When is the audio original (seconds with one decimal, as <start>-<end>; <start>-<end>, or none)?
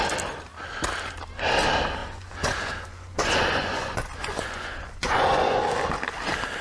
0.0-2.0; 5.6-6.6